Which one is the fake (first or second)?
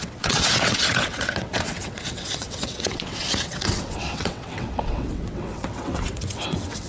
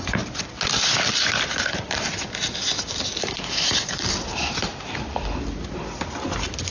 first